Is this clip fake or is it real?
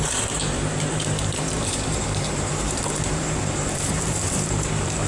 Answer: fake